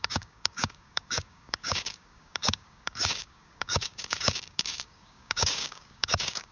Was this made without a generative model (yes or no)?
no